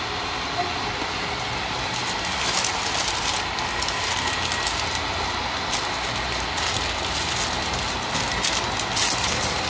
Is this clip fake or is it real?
real